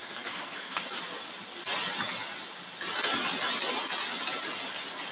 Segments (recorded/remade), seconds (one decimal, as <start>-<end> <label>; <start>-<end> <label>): 0.0-0.8 remade; 0.8-5.1 recorded